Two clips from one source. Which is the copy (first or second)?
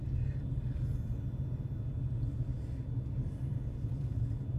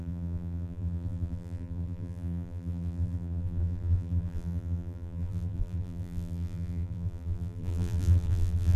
second